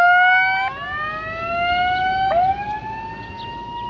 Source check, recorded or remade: recorded